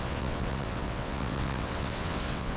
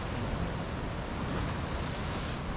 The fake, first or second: first